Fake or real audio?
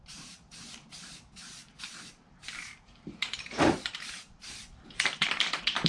fake